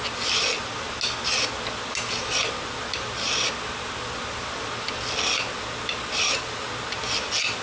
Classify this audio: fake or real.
real